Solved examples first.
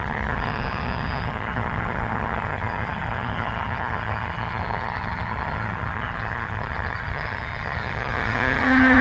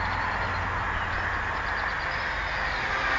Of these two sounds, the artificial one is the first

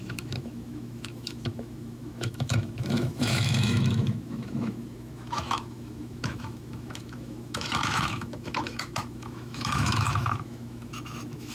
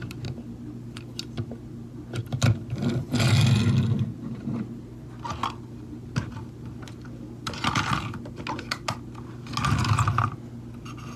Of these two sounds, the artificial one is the first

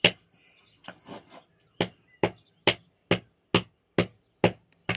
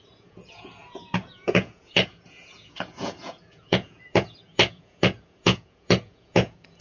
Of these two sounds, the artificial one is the second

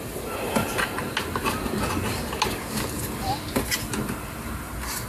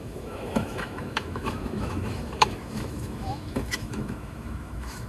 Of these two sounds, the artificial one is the second